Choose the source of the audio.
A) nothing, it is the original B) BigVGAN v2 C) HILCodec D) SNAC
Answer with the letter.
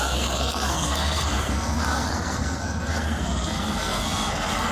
D